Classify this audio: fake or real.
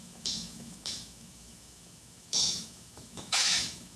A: fake